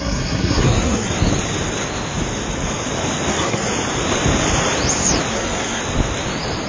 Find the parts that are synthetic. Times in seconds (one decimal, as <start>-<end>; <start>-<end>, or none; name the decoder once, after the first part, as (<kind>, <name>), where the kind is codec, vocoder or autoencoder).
0.0-1.1 (codec, SNAC); 3.3-3.7; 5.3-5.8